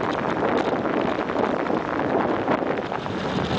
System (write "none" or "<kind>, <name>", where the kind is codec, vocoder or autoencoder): none